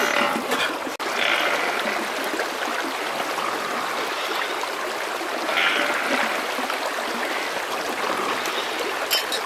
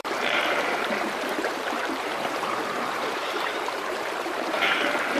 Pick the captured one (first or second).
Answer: first